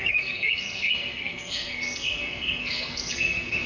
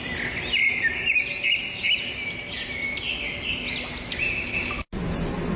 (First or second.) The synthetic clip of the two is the first